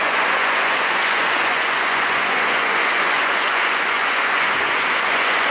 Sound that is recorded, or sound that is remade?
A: remade